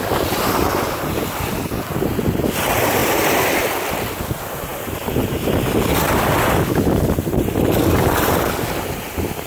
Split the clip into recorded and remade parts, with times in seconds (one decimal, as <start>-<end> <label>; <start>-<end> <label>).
0.0-3.0 recorded; 3.0-4.1 remade; 4.1-9.5 recorded